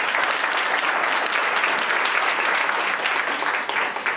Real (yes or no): yes